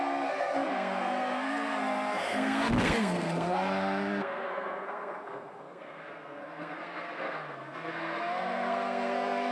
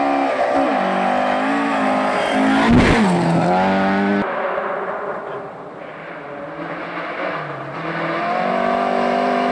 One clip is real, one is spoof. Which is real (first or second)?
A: second